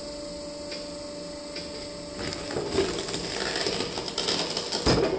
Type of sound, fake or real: real